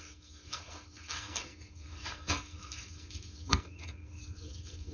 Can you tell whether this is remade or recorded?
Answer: remade